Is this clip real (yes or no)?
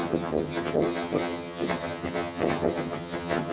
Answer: no